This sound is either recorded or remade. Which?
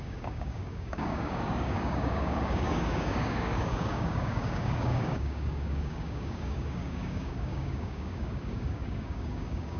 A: remade